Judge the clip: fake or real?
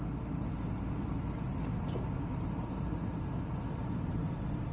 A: real